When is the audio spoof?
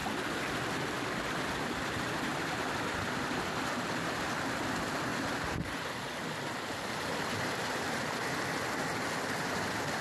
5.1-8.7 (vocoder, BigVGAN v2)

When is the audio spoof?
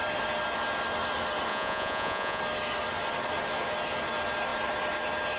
1.5-2.4 (vocoder, Vocos)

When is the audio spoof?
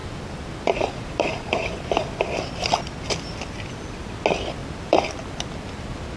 0.0-3.7 (vocoder, BigVGAN v2); 4.6-5.8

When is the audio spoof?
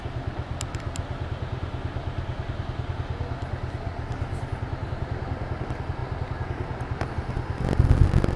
none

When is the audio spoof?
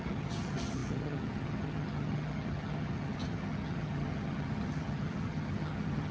0.0-6.1 (vocoder, HiFi-GAN)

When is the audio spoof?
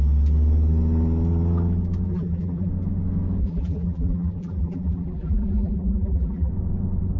2.1-2.7 (vocoder, BigVGAN v2); 3.4-6.5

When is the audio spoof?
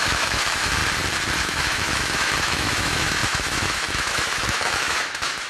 0.0-0.8 (autoencoder, DAC-VAE); 1.4-5.5